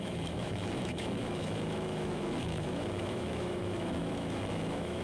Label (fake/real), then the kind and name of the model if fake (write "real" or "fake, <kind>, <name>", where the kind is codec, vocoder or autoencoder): fake, autoencoder, DAC-VAE